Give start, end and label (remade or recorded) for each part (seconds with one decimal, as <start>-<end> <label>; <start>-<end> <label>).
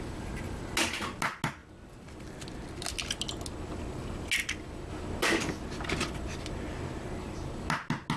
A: 0.0-1.6 recorded; 1.6-2.9 remade; 2.9-8.2 recorded